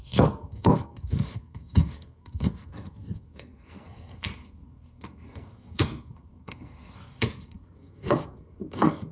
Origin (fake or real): fake